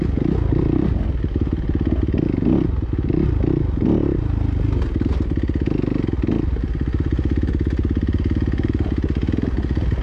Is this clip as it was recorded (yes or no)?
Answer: yes